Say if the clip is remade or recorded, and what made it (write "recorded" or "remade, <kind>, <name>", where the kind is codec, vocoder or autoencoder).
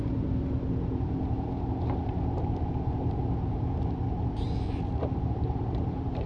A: remade, vocoder, BigVGAN v2